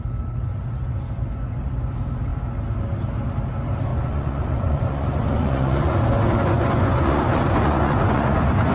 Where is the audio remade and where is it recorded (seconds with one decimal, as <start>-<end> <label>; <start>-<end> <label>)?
0.0-3.9 recorded; 3.9-8.7 remade